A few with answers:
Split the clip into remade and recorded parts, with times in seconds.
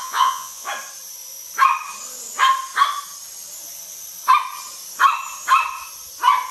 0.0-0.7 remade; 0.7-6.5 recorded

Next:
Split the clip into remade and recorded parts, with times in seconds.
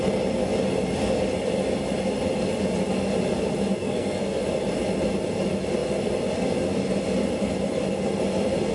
0.0-3.8 recorded; 3.8-4.4 remade; 4.4-8.7 recorded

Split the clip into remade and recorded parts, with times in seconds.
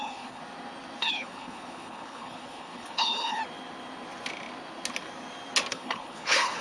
0.0-0.4 remade; 0.4-1.0 recorded; 1.0-3.4 remade; 3.4-5.7 recorded; 5.7-6.6 remade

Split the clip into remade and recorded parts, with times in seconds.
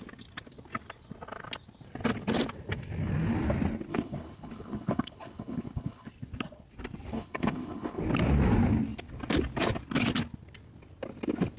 0.0-3.9 recorded; 3.9-6.1 remade; 6.1-7.1 recorded; 7.1-8.0 remade; 8.0-11.6 recorded